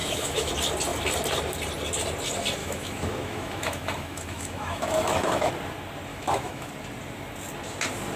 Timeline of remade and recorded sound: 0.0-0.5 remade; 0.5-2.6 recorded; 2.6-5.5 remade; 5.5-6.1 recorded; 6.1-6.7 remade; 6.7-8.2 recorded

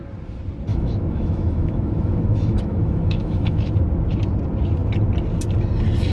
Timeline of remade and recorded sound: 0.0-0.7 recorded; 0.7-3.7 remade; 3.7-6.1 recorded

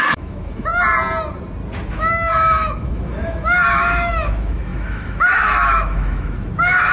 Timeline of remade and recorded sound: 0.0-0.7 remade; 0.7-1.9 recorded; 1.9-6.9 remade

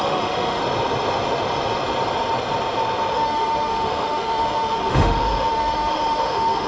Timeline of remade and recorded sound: 0.0-0.6 remade; 0.6-3.1 recorded; 3.1-6.7 remade

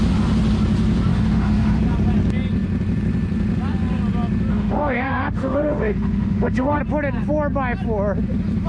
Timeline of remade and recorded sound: 0.0-1.1 recorded; 1.1-1.8 remade; 1.8-4.5 recorded; 4.5-6.8 remade; 6.8-8.7 recorded

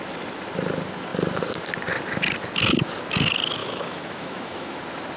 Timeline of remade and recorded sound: 0.0-3.6 recorded; 3.6-4.8 remade; 4.8-5.2 recorded

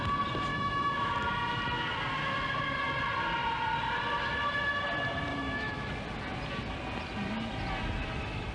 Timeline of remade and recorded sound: 0.0-0.5 recorded; 0.5-1.1 remade; 1.1-5.3 recorded; 5.3-5.9 remade; 5.9-8.5 recorded

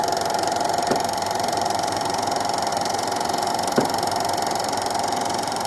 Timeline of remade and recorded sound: 0.0-5.7 recorded